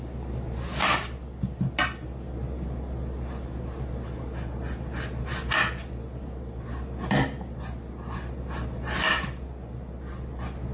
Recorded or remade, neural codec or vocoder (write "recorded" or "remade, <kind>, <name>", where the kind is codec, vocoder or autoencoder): recorded